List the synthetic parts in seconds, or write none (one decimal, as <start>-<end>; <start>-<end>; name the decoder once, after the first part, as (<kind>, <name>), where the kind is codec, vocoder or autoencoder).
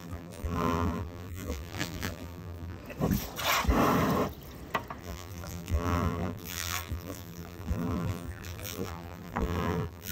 0.0-2.8 (vocoder, BigVGAN v2); 5.0-10.1